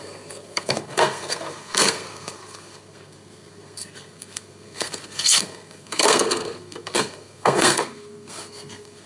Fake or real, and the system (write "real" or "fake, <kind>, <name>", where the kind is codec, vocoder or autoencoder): fake, codec, SNAC